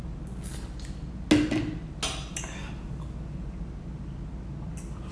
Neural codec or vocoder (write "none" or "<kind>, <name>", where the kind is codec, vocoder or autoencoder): none